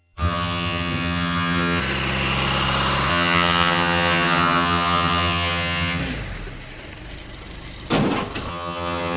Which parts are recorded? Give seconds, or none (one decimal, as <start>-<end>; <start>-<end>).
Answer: 1.8-3.1; 6.0-8.5